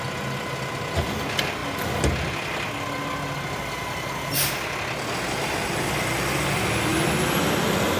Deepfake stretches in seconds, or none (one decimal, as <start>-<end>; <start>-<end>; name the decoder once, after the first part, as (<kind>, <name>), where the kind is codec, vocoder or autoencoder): none